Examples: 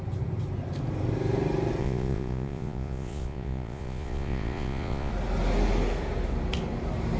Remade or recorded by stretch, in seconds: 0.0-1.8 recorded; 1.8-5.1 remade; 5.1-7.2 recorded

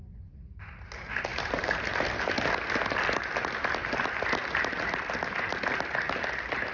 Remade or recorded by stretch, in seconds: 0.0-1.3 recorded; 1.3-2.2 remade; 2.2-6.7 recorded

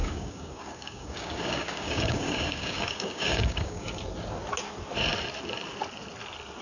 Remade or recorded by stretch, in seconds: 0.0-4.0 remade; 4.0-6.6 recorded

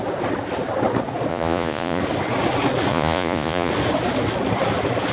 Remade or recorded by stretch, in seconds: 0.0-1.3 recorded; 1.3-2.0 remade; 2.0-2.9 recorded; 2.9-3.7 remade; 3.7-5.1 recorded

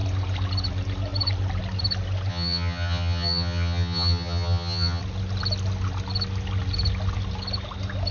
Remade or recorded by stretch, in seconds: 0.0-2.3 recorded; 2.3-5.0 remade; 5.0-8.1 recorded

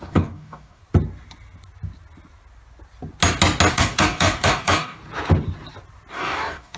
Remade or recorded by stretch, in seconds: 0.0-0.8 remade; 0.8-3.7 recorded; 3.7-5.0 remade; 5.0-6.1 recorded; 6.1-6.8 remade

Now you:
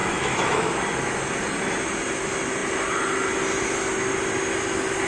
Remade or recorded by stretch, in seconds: 0.0-0.7 remade; 0.7-5.1 recorded

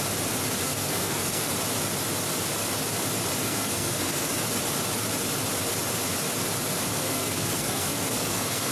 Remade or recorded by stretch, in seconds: 0.0-0.6 recorded; 0.6-1.5 remade; 1.5-3.4 recorded; 3.4-4.3 remade; 4.3-6.9 recorded; 6.9-8.7 remade